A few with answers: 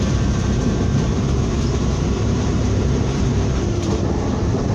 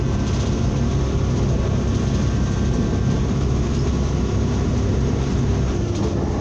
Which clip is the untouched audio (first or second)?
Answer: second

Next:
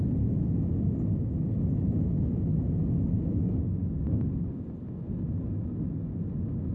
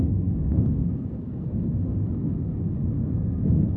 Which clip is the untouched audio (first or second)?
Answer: first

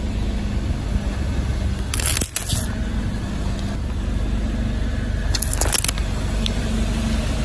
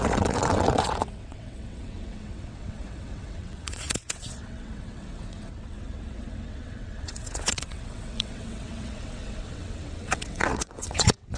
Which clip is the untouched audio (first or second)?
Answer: first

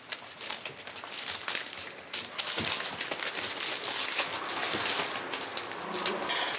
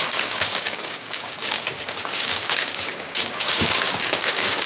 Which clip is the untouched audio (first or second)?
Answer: first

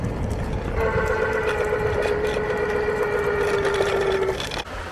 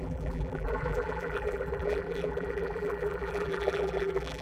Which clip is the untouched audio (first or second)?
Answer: first